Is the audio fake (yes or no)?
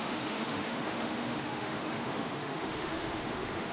yes